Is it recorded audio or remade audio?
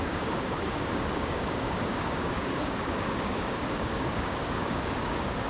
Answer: remade